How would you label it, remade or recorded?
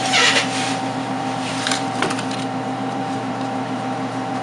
remade